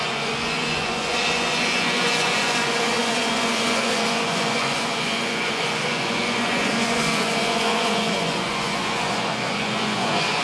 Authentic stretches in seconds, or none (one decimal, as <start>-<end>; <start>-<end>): none